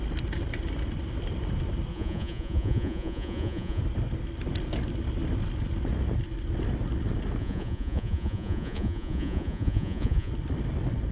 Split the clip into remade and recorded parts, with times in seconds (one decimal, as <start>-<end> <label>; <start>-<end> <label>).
0.0-1.9 recorded; 1.9-3.8 remade; 3.8-7.4 recorded; 7.4-10.3 remade; 10.3-11.1 recorded